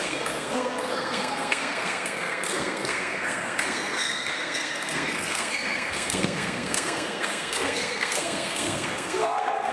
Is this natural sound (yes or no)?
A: no